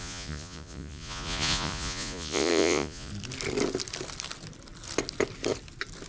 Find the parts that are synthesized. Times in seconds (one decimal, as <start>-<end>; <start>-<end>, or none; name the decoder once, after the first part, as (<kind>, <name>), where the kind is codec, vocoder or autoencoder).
0.0-3.1 (vocoder, Vocos)